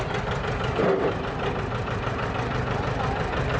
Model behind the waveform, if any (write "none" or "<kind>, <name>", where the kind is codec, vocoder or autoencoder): none